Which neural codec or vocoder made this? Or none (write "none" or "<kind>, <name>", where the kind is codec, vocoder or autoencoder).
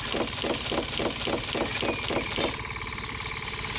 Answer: none